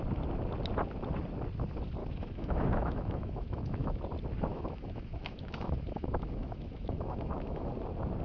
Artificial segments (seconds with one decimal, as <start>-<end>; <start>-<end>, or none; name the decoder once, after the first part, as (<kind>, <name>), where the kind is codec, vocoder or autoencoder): 2.0-4.0 (autoencoder, DAC-VAE); 4.5-7.7